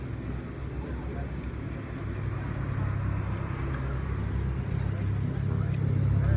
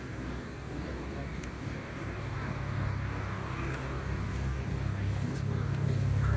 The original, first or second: first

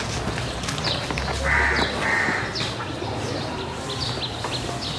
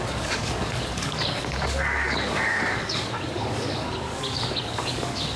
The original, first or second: first